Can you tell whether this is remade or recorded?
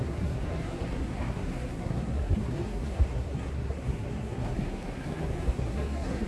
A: remade